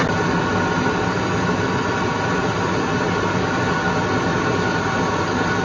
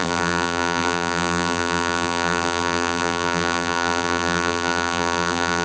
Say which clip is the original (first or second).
first